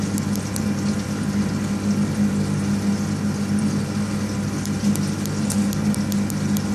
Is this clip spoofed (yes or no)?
no